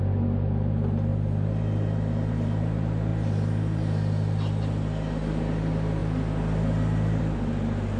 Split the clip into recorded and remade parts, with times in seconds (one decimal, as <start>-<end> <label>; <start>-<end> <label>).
0.0-8.0 recorded